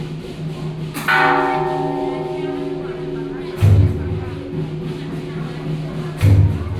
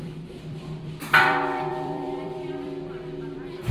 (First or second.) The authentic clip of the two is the first